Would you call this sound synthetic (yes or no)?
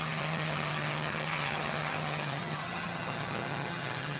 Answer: yes